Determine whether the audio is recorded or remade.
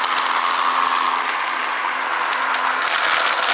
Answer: recorded